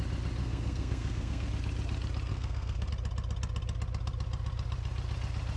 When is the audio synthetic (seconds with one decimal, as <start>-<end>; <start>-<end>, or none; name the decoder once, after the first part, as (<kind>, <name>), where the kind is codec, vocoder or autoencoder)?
0.4-1.5 (codec, SNAC); 2.3-2.9